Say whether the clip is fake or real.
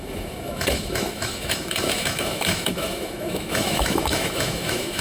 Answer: fake